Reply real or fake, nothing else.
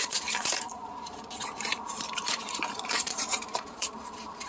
fake